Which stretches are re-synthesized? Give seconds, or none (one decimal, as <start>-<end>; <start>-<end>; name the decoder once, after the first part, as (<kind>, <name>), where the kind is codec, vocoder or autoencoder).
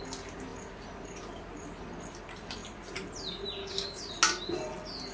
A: 3.6-4.1 (codec, DAC)